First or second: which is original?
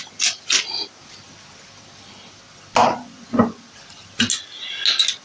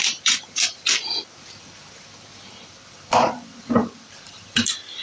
first